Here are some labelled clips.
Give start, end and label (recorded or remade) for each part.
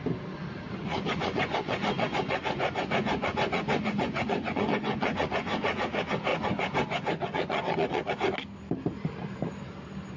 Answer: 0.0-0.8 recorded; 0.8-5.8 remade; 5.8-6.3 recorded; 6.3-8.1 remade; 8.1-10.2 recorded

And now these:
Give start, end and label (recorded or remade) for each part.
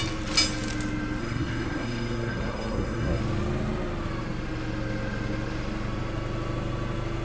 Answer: 0.0-1.2 recorded; 1.2-3.2 remade; 3.2-7.2 recorded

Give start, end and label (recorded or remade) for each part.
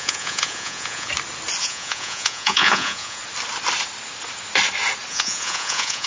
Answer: 0.0-1.1 remade; 1.1-1.6 recorded; 1.6-3.2 remade; 3.2-5.1 recorded; 5.1-6.1 remade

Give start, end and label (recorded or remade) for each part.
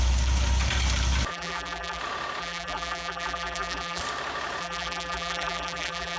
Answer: 0.0-1.3 recorded; 1.3-2.0 remade; 2.0-2.4 recorded; 2.4-4.0 remade; 4.0-4.6 recorded; 4.6-6.2 remade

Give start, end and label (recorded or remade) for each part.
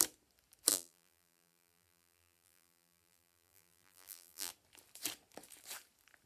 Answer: 0.0-0.7 recorded; 0.7-4.5 remade; 4.5-6.3 recorded